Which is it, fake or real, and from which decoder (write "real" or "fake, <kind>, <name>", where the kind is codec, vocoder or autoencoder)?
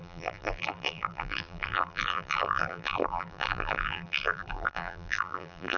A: fake, vocoder, BigVGAN v2